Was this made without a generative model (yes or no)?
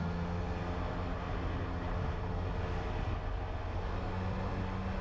yes